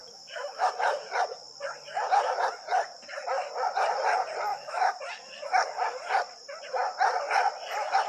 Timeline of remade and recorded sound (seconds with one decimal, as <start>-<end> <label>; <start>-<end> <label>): 0.0-0.7 remade; 0.7-4.5 recorded; 4.5-5.0 remade; 5.0-8.1 recorded